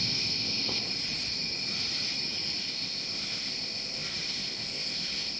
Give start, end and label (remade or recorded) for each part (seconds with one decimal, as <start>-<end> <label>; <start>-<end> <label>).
0.0-0.8 remade; 0.8-2.6 recorded; 2.6-5.4 remade